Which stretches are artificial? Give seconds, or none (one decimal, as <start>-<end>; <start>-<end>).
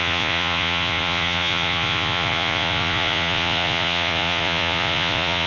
0.0-5.5